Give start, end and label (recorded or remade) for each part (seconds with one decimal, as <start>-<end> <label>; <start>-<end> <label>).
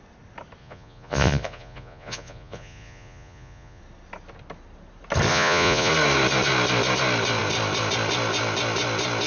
0.0-0.6 recorded; 0.6-3.8 remade; 3.8-5.3 recorded; 5.3-5.9 remade; 5.9-9.3 recorded